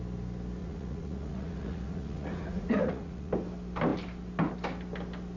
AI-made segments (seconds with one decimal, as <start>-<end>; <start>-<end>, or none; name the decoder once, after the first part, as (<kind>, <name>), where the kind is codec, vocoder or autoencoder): 0.6-3.3 (vocoder, Vocos)